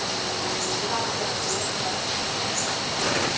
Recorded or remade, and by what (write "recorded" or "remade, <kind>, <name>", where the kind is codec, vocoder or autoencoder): recorded